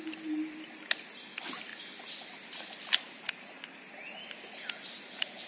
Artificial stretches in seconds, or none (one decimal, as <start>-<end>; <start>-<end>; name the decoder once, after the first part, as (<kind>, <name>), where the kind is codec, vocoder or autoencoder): none